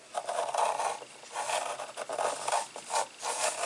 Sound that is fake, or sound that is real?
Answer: real